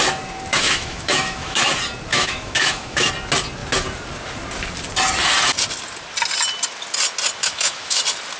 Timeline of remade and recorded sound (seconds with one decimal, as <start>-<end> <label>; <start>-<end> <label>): 0.0-0.5 recorded; 0.5-1.7 remade; 1.7-2.1 recorded; 2.1-3.1 remade; 3.1-7.4 recorded; 7.4-8.0 remade; 8.0-8.4 recorded